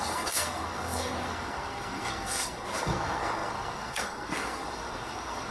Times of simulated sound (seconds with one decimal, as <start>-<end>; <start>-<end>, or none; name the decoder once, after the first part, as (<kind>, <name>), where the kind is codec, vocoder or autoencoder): 0.0-5.5 (codec, SNAC)